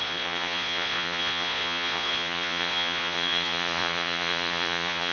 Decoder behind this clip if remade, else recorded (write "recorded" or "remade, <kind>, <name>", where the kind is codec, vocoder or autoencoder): remade, vocoder, Vocos